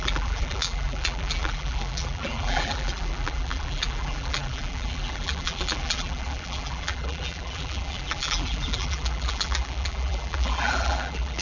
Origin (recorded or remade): remade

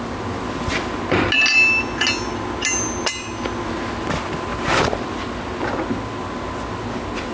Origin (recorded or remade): recorded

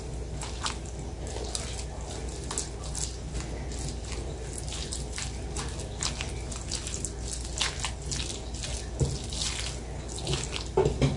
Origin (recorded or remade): recorded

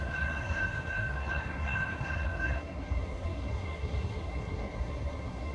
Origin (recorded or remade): remade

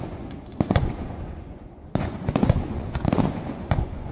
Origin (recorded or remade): remade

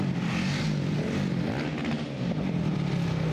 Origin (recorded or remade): recorded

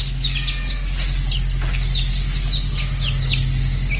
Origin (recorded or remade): recorded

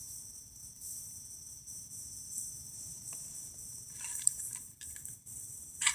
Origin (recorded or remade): remade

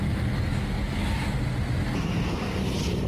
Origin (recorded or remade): recorded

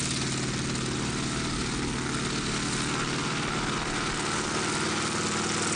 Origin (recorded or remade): recorded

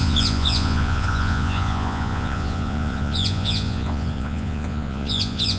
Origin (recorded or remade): remade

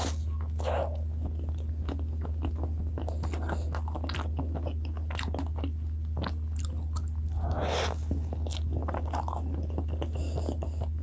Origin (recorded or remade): recorded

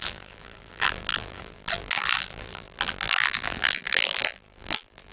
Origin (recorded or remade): remade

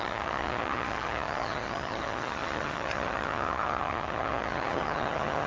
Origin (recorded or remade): remade